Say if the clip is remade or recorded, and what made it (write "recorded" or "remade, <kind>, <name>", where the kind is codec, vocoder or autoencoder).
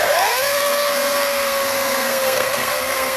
remade, codec, SNAC